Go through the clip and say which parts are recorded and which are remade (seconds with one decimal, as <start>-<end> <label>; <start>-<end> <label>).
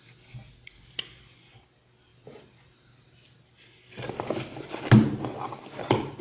0.0-6.2 recorded